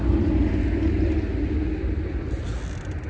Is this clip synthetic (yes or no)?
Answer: no